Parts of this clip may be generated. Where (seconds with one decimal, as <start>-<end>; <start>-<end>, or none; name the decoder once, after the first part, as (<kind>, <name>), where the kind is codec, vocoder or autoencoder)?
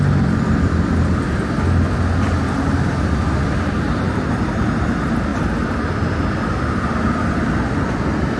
none